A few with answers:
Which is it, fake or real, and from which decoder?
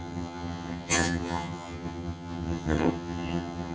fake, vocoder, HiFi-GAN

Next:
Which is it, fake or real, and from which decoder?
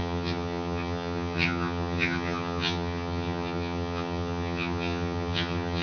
fake, vocoder, HiFi-GAN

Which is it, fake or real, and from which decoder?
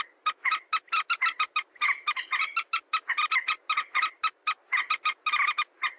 real